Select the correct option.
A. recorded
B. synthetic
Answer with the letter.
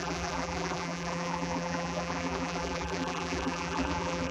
B